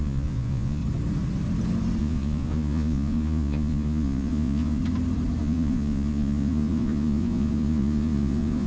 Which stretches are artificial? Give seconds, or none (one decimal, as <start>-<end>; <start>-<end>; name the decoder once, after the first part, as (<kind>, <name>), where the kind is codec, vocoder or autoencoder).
0.0-0.8 (vocoder, Vocos); 2.0-4.8; 5.4-8.7